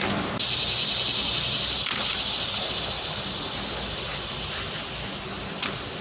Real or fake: real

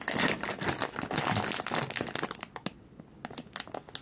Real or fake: real